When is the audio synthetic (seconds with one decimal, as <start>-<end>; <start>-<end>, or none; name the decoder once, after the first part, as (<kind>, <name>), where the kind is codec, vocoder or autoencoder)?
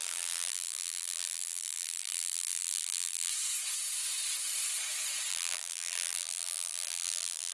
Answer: 0.0-3.3 (vocoder, BigVGAN v2); 5.3-7.5